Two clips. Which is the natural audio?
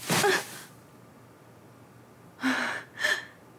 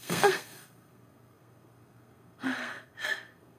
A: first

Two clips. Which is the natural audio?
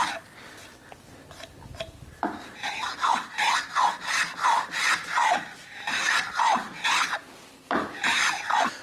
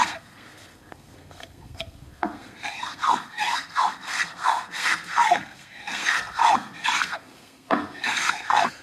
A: first